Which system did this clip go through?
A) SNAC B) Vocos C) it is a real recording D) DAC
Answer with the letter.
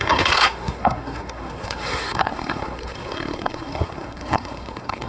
A